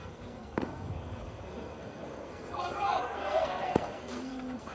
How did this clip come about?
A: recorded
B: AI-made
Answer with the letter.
B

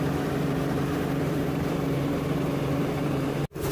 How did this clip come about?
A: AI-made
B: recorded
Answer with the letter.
A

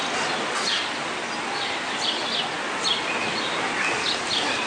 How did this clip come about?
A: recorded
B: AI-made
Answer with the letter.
A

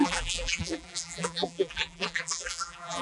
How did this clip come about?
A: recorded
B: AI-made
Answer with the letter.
B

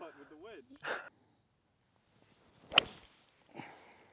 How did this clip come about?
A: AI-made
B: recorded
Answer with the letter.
B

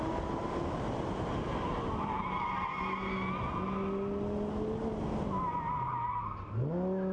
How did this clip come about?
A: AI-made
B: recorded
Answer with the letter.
B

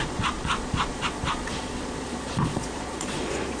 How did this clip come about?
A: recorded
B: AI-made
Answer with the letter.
B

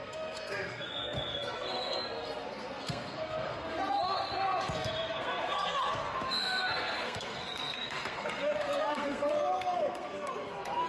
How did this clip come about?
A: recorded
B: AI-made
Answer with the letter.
B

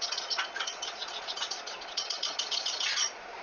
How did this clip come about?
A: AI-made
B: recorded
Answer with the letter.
A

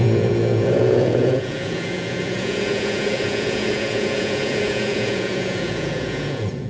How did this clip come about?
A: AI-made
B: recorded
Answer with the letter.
A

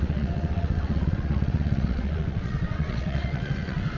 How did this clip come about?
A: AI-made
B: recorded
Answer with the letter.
A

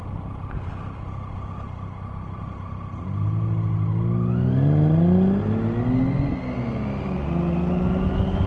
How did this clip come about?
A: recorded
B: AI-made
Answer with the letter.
A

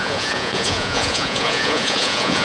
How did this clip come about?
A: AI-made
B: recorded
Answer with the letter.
A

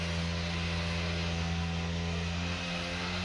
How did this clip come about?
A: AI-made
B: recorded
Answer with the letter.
B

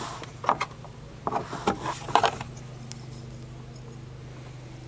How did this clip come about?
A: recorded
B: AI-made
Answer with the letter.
A